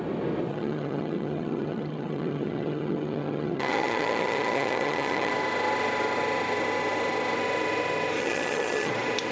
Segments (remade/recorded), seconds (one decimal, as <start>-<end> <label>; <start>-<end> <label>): 0.0-0.5 recorded; 0.5-5.3 remade; 5.3-8.2 recorded; 8.2-8.9 remade; 8.9-9.3 recorded